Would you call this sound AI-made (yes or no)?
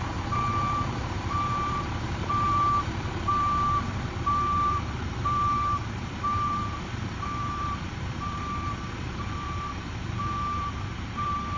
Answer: yes